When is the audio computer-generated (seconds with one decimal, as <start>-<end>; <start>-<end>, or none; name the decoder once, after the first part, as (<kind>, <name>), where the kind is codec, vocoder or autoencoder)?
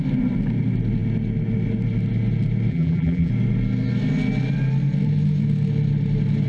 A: 2.7-3.3 (vocoder, BigVGAN v2)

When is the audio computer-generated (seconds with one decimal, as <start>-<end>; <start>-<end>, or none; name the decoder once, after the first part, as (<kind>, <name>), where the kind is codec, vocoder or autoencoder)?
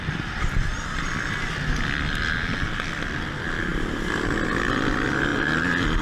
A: none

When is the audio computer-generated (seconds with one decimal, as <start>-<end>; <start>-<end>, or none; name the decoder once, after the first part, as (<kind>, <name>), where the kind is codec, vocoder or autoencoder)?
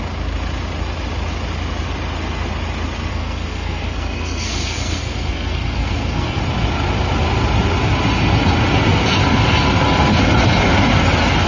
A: 3.1-6.4 (codec, SNAC)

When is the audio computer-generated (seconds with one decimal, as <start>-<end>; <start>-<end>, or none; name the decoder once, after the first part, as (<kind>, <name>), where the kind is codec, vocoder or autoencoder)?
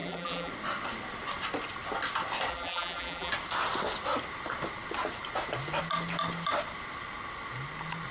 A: 0.0-0.5 (vocoder, BigVGAN v2); 2.5-3.3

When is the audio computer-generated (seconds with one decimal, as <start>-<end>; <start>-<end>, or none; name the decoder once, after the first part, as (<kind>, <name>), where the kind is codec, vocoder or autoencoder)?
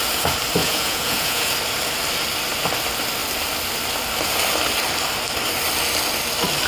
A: 0.6-1.5 (vocoder, Vocos)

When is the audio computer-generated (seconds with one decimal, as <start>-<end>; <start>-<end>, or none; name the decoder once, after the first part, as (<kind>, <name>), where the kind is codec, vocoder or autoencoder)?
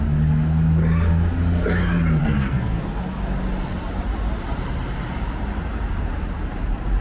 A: 2.2-2.8 (codec, SNAC)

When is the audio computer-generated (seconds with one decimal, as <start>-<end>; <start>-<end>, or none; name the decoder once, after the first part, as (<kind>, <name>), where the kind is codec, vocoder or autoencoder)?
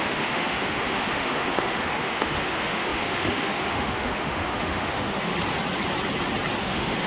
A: 0.0-5.3 (autoencoder, DAC-VAE); 6.6-7.1